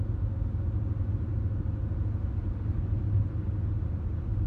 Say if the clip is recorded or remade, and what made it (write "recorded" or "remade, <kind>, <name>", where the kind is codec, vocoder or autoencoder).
recorded